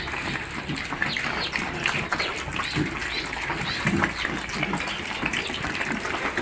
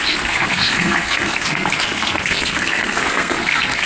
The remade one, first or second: second